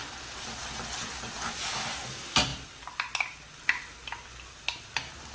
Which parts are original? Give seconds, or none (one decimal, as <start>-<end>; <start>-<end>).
0.0-5.3